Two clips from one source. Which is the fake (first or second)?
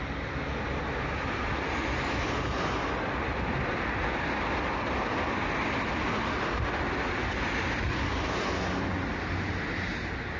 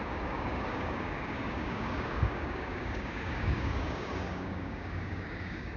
second